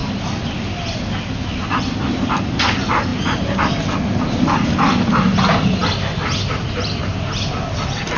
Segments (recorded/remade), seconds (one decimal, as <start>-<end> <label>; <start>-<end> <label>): 0.0-8.2 recorded